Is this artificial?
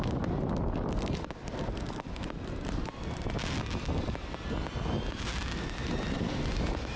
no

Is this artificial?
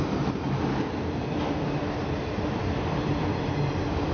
no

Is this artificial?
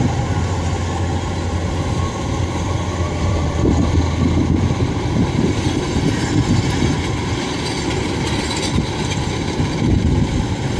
no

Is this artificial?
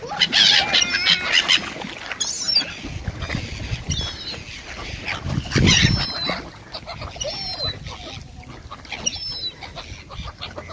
no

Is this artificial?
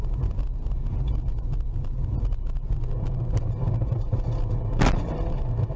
no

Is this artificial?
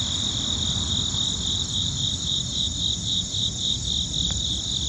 no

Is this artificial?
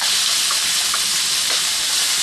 no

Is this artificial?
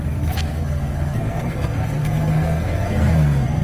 yes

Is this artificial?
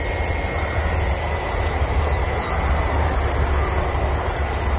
no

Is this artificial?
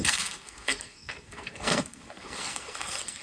yes